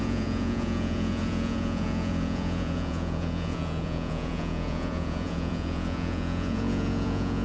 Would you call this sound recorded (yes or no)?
no